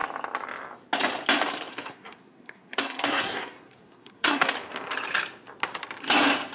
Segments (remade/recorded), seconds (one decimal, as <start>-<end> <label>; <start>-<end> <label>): 0.0-1.7 recorded; 1.7-4.5 remade; 4.5-6.5 recorded